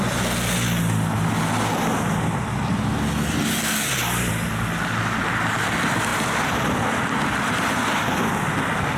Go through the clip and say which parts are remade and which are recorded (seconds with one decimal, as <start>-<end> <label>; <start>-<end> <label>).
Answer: 0.0-6.1 recorded; 6.1-8.4 remade; 8.4-9.0 recorded